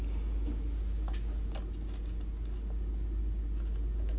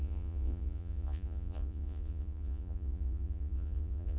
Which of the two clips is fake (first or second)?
second